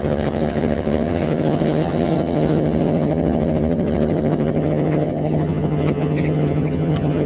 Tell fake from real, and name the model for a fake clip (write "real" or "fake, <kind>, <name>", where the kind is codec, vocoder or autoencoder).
fake, vocoder, HiFi-GAN